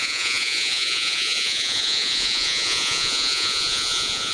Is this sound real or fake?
fake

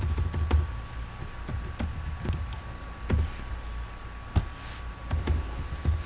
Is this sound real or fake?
real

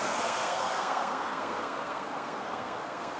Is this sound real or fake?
fake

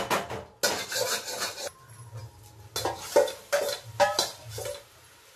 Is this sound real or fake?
real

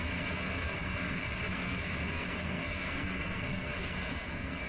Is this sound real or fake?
fake